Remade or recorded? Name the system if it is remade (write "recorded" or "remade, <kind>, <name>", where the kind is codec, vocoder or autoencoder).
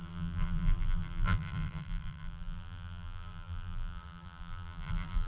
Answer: remade, vocoder, BigVGAN v2